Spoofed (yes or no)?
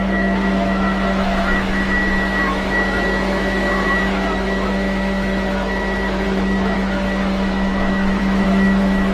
yes